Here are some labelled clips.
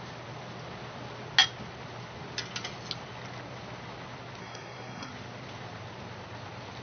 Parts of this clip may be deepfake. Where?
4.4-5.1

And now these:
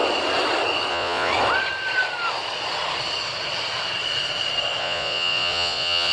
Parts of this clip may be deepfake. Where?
0.9-1.3; 4.8-6.1

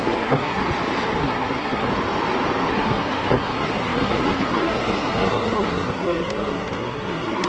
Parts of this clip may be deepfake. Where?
0.0-0.6; 1.2-1.9; 2.7-7.5